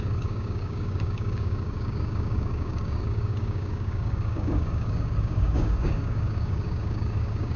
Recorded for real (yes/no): no